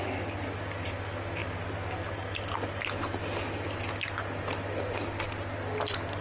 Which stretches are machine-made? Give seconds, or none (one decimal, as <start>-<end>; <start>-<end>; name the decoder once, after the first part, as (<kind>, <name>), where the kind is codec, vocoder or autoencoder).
none